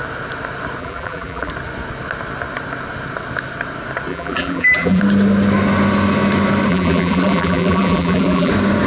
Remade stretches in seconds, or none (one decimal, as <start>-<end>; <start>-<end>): 0.8-1.5; 4.1-5.0; 6.7-8.5